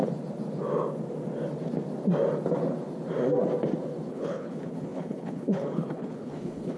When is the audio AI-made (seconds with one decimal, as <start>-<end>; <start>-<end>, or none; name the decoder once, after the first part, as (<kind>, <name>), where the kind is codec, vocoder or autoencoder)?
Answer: 4.1-6.8 (codec, HILCodec)